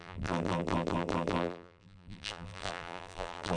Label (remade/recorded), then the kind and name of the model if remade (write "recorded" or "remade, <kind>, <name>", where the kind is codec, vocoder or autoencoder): remade, vocoder, BigVGAN v2